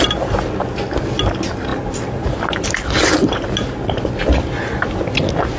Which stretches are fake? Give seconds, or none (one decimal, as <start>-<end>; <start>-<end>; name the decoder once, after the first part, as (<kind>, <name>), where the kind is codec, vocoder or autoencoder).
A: none